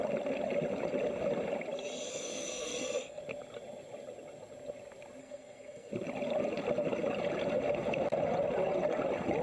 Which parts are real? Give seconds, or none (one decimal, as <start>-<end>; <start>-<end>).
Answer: 0.0-2.1; 3.2-5.2; 5.9-9.4